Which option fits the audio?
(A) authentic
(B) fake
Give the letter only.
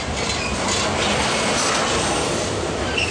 A